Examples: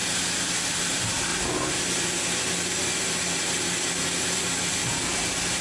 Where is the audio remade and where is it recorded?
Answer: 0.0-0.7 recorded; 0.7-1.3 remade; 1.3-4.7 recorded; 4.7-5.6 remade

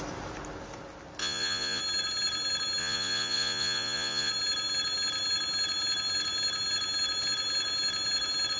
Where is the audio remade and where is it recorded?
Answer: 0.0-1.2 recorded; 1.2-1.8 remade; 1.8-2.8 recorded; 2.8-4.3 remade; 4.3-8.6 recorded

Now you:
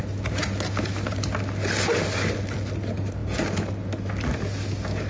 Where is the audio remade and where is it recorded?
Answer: 0.0-5.1 recorded

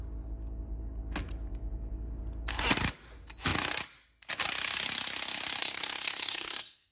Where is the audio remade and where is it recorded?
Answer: 0.0-5.6 recorded; 5.6-6.9 remade

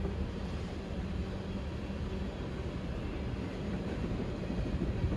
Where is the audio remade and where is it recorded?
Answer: 0.0-1.2 remade; 1.2-3.5 recorded; 3.5-5.2 remade

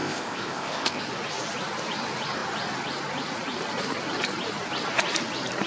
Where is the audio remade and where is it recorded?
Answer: 0.0-1.0 remade; 1.0-5.7 recorded

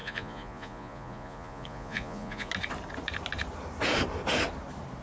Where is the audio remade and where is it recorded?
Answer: 0.0-2.5 remade; 2.5-5.0 recorded